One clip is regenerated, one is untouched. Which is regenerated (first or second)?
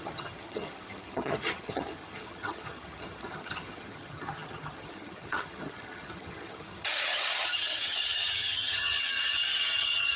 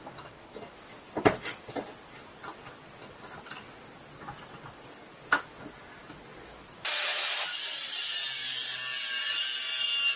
first